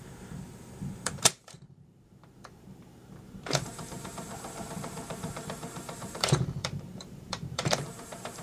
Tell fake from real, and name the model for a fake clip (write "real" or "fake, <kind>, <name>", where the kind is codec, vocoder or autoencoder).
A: fake, vocoder, BigVGAN v2